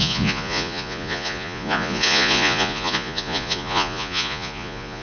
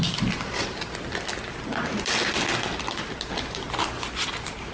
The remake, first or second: first